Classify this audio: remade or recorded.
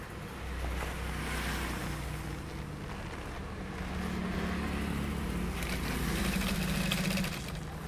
recorded